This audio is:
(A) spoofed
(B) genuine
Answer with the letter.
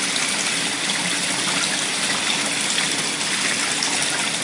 B